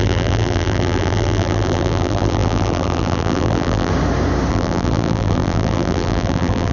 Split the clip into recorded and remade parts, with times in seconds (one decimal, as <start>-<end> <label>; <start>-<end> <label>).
0.0-3.9 remade; 3.9-4.5 recorded; 4.5-6.7 remade